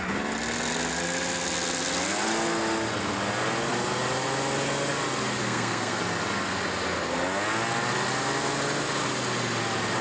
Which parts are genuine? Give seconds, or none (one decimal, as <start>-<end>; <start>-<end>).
0.0-5.4; 6.0-10.0